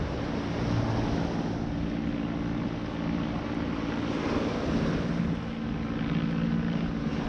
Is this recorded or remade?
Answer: recorded